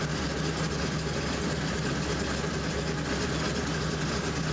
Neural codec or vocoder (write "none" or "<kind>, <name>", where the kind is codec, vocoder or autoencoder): none